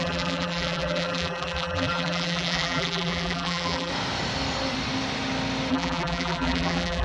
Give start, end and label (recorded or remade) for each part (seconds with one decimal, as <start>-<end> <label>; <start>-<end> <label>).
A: 0.0-3.9 remade; 3.9-5.7 recorded; 5.7-7.0 remade

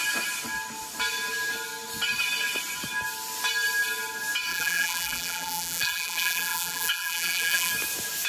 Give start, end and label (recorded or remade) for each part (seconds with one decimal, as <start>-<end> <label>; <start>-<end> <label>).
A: 0.0-4.5 recorded; 4.5-7.7 remade; 7.7-8.3 recorded

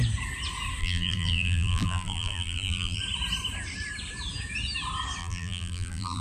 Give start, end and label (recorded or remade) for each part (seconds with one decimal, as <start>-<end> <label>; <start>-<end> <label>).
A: 0.0-0.8 recorded; 0.8-3.0 remade; 3.0-5.2 recorded; 5.2-6.2 remade

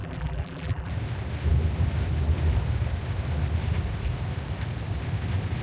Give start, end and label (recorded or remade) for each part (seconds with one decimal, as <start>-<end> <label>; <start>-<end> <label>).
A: 0.0-0.9 remade; 0.9-5.6 recorded

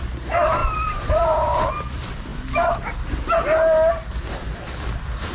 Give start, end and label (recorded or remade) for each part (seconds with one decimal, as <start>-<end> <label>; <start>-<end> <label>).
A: 0.0-0.6 recorded; 0.6-1.7 remade; 1.7-5.3 recorded